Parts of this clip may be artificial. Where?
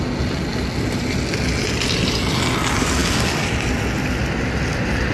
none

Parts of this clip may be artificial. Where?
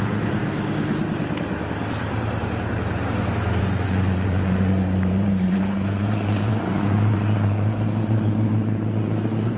0.0-0.4 (vocoder, Vocos); 3.6-9.6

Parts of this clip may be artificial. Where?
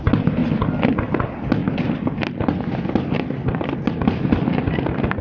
none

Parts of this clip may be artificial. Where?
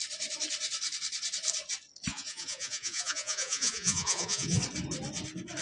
2.1-4.6 (vocoder, Vocos)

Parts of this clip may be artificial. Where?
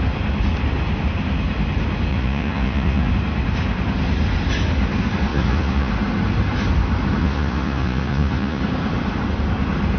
2.1-3.1 (vocoder, Vocos); 5.3-5.9; 7.2-8.6